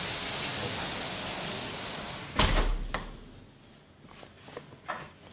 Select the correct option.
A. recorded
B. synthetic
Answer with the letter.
A